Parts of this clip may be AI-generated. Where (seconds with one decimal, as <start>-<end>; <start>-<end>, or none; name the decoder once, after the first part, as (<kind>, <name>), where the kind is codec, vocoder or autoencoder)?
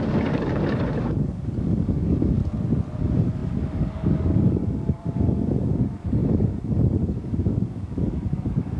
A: 0.0-2.4 (codec, DAC); 3.0-8.8